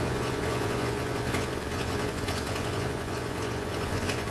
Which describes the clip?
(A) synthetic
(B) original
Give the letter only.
A